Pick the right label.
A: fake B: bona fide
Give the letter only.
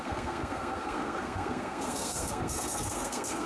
A